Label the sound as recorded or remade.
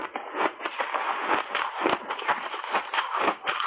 remade